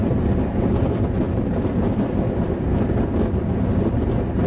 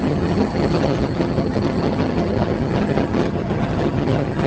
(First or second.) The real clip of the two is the first